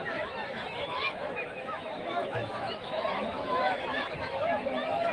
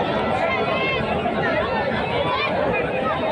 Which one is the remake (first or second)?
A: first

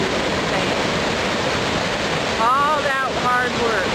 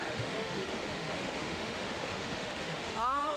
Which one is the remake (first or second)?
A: second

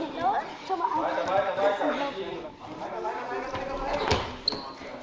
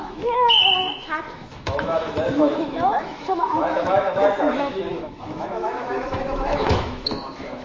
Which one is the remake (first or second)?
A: second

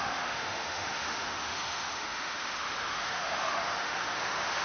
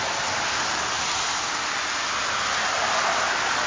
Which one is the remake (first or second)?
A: first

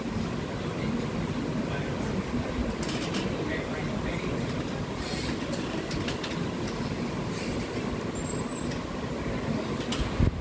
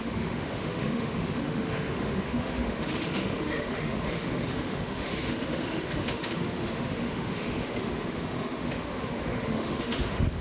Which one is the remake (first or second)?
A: second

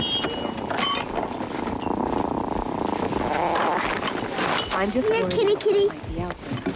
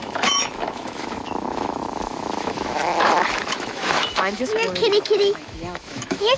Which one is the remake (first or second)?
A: second